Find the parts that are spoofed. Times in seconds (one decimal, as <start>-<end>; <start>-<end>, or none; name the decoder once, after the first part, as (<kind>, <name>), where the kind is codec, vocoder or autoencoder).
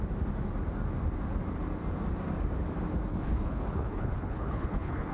3.1-5.1 (codec, HILCodec)